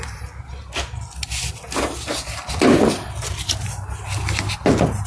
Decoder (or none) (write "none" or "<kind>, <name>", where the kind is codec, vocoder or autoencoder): none